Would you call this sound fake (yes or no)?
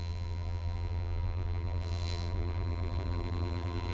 yes